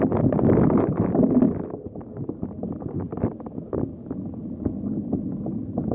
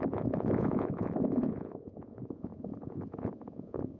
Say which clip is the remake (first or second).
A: second